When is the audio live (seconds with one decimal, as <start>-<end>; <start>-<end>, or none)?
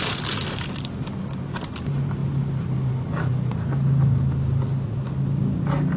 0.0-6.0